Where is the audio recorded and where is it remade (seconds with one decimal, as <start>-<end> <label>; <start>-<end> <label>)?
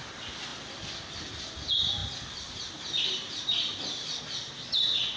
0.0-0.5 recorded; 0.5-1.4 remade; 1.4-2.0 recorded; 2.0-4.2 remade; 4.2-5.2 recorded